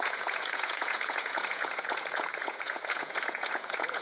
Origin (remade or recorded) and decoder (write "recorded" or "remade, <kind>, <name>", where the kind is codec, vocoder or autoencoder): remade, vocoder, Vocos